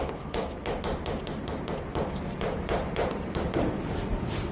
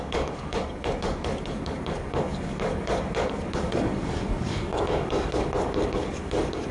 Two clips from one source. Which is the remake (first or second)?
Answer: second